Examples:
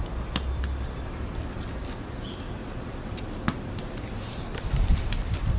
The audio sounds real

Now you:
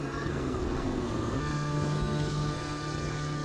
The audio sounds fake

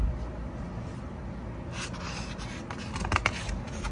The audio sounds real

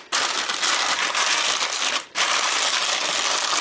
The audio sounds real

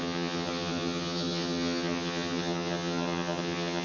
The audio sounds fake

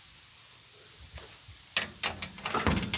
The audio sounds real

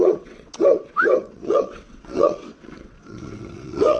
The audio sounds fake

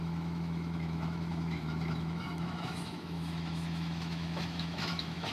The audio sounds fake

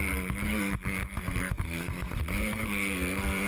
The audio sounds fake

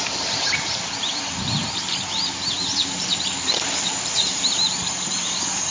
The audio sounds fake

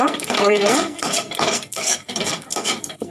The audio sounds fake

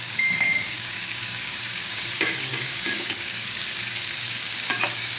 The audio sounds fake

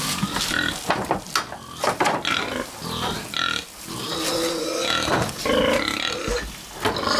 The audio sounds real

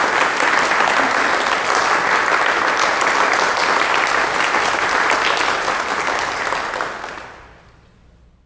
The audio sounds real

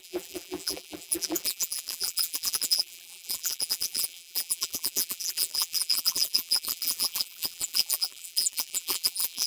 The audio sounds fake